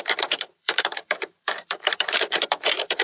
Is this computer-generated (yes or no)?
yes